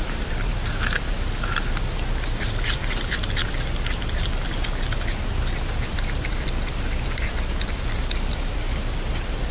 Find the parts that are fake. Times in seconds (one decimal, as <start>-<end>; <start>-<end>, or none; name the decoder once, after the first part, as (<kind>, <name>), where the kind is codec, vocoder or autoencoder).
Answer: 0.0-0.5 (vocoder, BigVGAN v2); 1.0-9.5